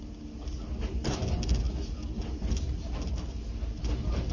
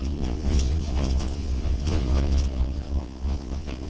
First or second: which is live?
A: first